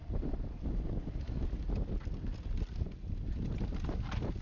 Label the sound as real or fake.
real